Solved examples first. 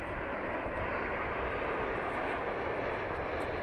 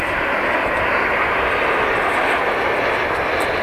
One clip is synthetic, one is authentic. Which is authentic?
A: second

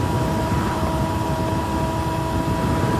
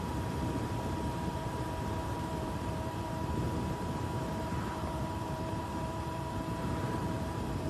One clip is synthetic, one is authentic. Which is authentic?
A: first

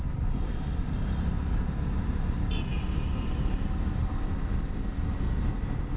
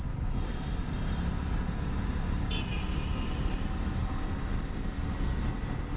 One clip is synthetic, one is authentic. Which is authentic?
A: second